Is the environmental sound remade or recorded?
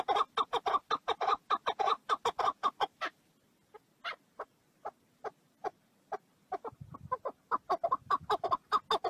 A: recorded